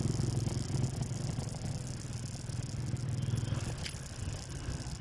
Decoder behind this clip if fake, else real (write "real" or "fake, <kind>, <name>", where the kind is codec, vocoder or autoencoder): real